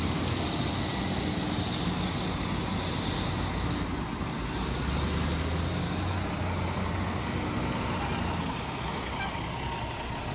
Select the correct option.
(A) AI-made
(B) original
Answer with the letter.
B